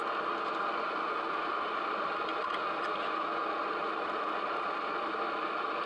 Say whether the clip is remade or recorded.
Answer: recorded